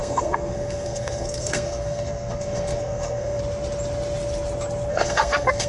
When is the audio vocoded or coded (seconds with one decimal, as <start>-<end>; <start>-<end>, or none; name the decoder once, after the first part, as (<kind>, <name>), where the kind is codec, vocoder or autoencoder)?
0.0-3.4 (codec, SNAC); 4.9-5.7